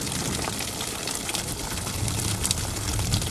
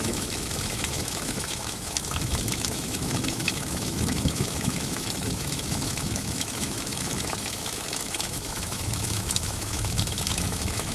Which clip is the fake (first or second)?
second